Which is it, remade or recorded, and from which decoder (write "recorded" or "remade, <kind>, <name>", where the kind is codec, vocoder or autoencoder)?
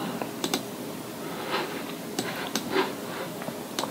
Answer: recorded